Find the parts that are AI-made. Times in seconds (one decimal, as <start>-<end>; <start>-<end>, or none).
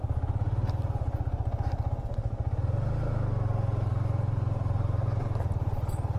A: 3.9-5.8